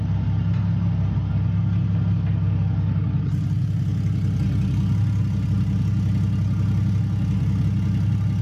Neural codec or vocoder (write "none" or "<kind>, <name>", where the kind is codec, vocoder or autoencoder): none